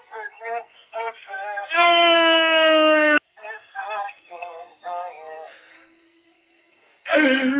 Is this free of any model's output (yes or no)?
no